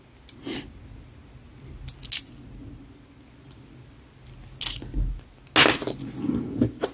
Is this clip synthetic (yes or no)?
no